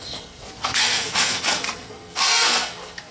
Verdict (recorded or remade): remade